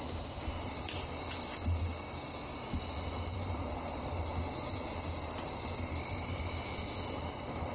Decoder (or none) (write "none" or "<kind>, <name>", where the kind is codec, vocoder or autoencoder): none